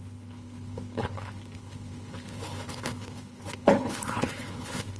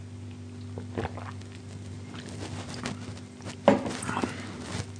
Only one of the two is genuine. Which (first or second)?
second